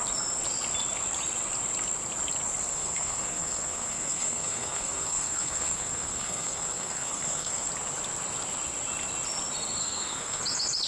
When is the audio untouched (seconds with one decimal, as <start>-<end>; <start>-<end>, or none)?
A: 0.0-2.7; 7.7-9.8; 10.4-10.9